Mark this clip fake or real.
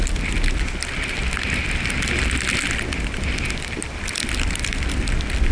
real